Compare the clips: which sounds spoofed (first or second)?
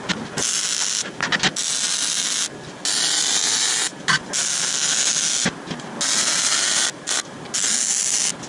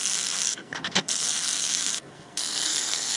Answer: second